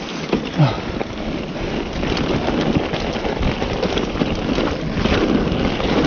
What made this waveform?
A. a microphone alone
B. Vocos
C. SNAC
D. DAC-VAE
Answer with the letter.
A